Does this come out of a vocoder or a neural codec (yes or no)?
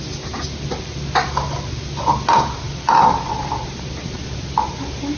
no